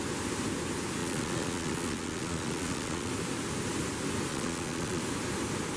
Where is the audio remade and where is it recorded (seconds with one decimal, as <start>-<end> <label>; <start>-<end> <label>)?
0.0-1.0 recorded; 1.0-3.1 remade; 3.1-4.3 recorded; 4.3-5.0 remade; 5.0-5.8 recorded